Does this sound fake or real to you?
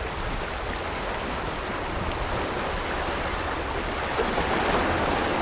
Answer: real